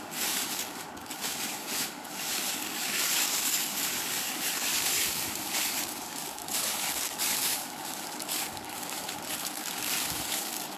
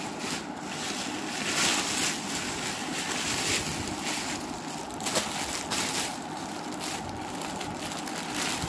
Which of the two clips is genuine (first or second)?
second